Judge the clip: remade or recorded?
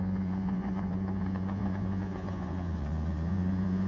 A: remade